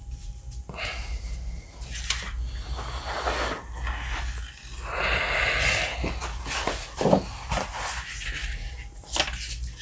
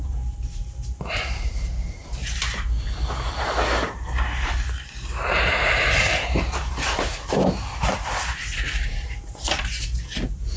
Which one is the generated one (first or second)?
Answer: second